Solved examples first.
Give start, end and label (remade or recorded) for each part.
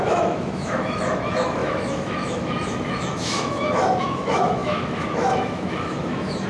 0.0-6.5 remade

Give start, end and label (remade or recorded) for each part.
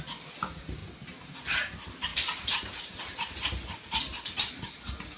0.0-2.1 recorded; 2.1-3.0 remade; 3.0-5.2 recorded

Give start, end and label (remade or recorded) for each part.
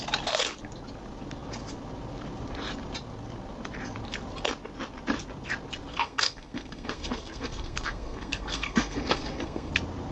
0.0-5.9 recorded; 5.9-9.7 remade; 9.7-10.1 recorded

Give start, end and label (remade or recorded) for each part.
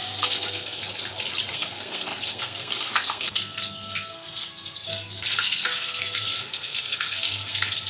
0.0-0.8 remade; 0.8-1.5 recorded; 1.5-7.9 remade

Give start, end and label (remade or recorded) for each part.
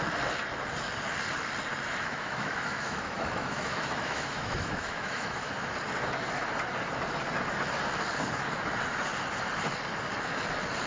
0.0-1.9 recorded; 1.9-5.5 remade; 5.5-10.9 recorded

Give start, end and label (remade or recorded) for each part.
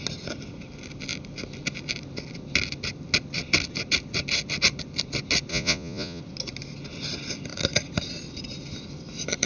0.0-5.5 recorded; 5.5-6.2 remade; 6.2-9.5 recorded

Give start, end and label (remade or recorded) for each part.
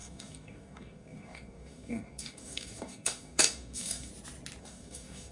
0.0-4.1 remade; 4.1-4.6 recorded; 4.6-5.3 remade